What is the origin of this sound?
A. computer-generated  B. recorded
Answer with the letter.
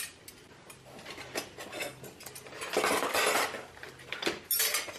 B